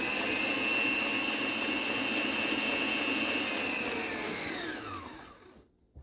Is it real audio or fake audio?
real